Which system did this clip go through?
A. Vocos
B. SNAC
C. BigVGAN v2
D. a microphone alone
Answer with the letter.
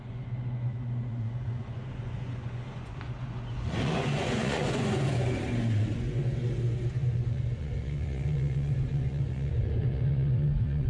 A